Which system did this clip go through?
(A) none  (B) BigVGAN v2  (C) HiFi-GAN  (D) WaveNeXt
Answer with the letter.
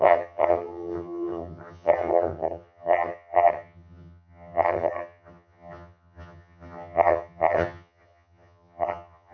C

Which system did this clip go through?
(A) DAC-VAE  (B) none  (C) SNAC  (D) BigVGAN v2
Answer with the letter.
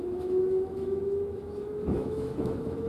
A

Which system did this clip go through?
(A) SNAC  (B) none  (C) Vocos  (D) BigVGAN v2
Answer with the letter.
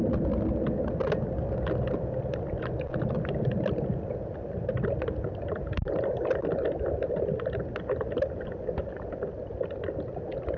B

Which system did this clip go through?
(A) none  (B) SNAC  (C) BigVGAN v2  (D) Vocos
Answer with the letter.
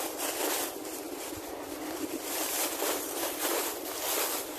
A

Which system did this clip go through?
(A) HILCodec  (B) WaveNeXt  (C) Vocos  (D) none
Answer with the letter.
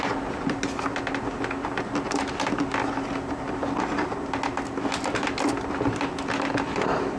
D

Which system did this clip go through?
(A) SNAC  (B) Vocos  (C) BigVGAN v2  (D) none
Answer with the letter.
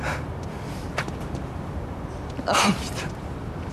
C